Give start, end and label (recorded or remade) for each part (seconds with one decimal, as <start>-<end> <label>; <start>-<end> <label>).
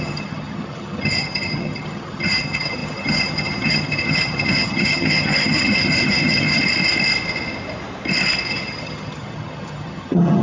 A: 0.0-6.6 remade; 6.6-8.5 recorded; 8.5-10.4 remade